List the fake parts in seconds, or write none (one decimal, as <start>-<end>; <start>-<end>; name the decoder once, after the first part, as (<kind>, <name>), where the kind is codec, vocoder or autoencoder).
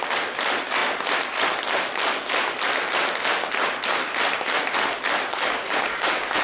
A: 5.3-6.4 (codec, DAC)